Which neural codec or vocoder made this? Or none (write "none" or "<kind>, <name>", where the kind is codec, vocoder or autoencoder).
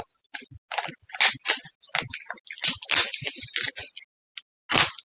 none